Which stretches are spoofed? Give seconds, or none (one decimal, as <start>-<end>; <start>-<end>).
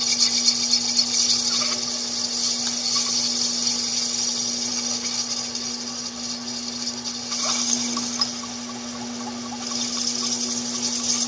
none